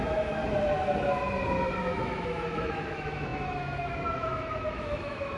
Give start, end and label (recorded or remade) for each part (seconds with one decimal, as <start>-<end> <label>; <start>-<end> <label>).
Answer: 0.0-0.4 remade; 0.4-1.8 recorded; 1.8-5.4 remade